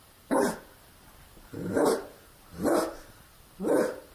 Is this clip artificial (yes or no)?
yes